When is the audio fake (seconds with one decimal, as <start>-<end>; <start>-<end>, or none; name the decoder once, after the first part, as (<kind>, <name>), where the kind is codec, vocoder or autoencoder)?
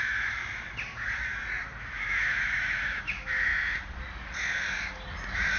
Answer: 0.0-0.4 (autoencoder, DAC-VAE); 1.8-3.5